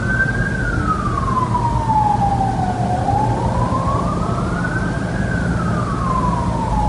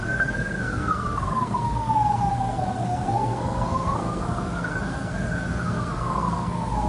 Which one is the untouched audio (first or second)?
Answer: first